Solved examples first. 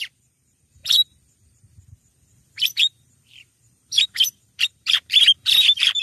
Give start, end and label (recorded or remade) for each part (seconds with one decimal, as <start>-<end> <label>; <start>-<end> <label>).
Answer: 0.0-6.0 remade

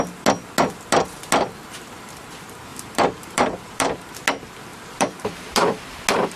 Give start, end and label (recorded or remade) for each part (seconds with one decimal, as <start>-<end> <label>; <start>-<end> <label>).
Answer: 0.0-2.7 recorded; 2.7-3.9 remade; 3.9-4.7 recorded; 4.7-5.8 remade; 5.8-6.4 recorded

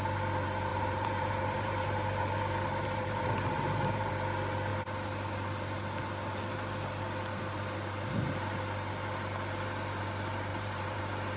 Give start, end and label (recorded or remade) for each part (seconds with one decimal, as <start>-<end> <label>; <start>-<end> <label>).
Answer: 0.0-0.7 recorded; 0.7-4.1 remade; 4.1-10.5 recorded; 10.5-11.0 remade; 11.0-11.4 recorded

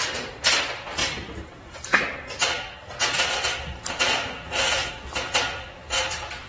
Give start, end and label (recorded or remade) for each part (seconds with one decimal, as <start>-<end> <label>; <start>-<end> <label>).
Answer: 0.0-1.0 recorded; 1.0-4.9 remade; 4.9-5.8 recorded; 5.8-6.5 remade

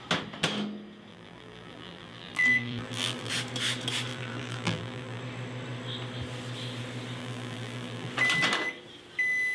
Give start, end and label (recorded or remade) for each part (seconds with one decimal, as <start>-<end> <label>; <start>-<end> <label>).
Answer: 0.0-1.1 recorded; 1.1-3.3 remade; 3.3-4.1 recorded; 4.1-5.2 remade; 5.2-7.2 recorded; 7.2-8.1 remade; 8.1-9.5 recorded

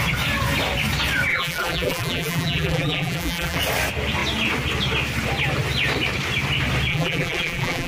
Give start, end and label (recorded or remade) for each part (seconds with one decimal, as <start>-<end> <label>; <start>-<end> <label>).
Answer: 0.0-1.3 recorded; 1.3-3.6 remade; 3.6-6.9 recorded; 6.9-7.9 remade

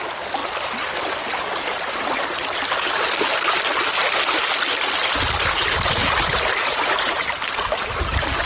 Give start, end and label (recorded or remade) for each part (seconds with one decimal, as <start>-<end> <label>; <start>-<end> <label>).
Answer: 0.0-6.0 recorded; 6.0-7.5 remade; 7.5-8.5 recorded